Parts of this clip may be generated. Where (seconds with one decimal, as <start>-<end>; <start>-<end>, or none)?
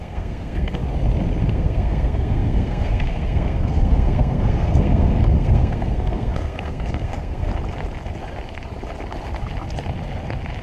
0.0-0.8; 1.4-7.5